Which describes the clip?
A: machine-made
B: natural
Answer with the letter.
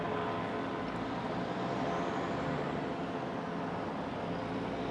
B